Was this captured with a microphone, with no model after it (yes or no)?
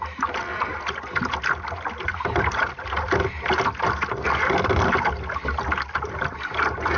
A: yes